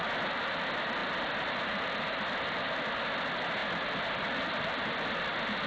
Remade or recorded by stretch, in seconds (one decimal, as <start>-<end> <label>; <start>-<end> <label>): 0.0-5.7 recorded